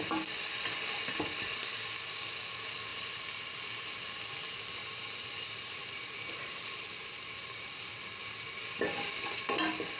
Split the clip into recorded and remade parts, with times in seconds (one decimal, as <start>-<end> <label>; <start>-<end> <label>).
0.0-2.9 recorded; 2.9-3.9 remade; 3.9-4.8 recorded; 4.8-7.9 remade; 7.9-10.0 recorded